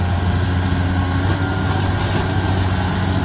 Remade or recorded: recorded